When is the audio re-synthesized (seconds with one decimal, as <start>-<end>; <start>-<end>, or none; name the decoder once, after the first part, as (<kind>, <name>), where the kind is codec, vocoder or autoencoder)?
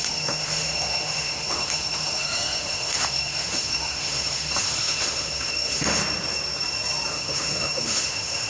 0.0-6.0 (autoencoder, DAC-VAE); 7.1-8.5